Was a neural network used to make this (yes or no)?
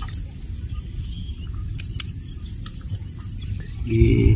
no